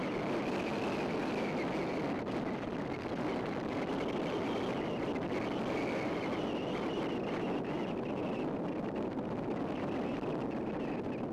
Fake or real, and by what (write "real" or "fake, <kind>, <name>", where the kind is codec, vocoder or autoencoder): real